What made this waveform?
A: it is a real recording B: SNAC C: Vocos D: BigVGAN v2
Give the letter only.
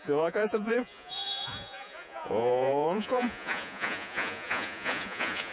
C